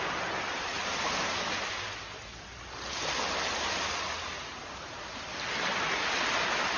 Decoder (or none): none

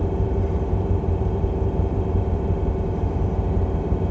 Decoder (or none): vocoder, BigVGAN v2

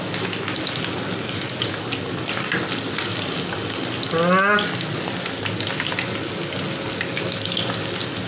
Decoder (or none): none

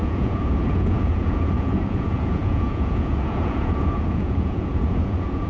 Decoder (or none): vocoder, Vocos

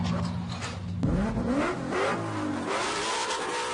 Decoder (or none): none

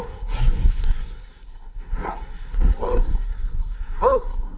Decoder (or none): codec, SNAC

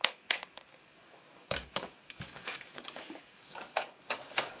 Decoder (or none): codec, DAC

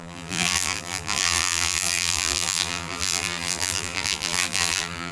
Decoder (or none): vocoder, BigVGAN v2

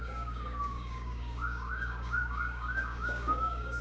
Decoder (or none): codec, DAC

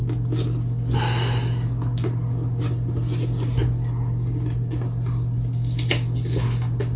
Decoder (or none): none